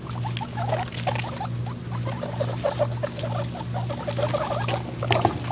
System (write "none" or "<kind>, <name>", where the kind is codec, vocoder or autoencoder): none